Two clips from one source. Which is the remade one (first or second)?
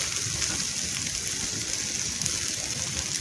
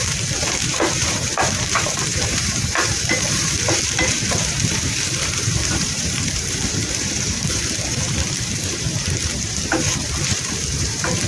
second